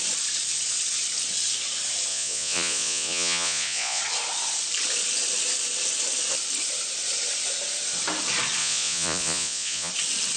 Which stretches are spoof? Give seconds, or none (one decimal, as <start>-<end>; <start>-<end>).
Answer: 2.1-4.0; 8.6-9.9

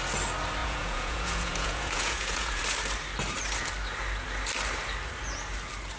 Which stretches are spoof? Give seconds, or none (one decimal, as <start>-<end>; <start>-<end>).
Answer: 0.6-2.6

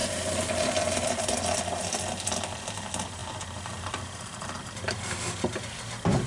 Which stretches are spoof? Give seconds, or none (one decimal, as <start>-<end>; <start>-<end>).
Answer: none

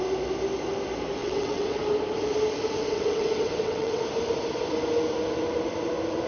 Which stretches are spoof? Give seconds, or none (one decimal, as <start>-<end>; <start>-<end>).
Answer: 1.2-1.8; 2.8-4.0